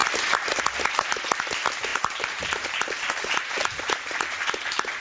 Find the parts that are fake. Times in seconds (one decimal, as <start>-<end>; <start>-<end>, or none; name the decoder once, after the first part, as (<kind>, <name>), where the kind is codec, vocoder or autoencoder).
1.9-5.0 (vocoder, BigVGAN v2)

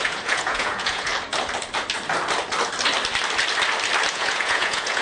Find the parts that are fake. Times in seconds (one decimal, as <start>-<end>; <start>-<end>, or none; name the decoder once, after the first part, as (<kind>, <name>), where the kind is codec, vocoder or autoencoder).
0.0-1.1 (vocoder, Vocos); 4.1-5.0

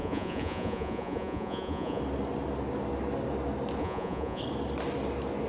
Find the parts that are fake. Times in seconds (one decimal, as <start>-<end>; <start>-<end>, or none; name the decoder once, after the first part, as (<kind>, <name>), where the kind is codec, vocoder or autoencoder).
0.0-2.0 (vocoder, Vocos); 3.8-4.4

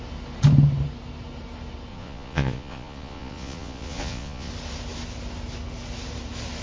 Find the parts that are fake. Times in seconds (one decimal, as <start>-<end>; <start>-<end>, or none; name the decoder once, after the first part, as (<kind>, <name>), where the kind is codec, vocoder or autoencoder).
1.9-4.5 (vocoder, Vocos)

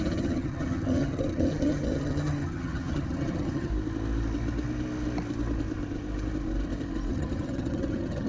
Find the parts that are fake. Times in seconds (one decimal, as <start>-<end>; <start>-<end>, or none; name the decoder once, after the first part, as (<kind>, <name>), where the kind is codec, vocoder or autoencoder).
0.0-3.7 (vocoder, HiFi-GAN); 7.1-8.3

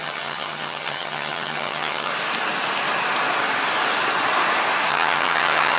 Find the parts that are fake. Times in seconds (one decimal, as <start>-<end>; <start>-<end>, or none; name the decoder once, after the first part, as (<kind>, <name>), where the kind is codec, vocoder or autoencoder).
0.0-2.1 (vocoder, HiFi-GAN); 4.9-5.8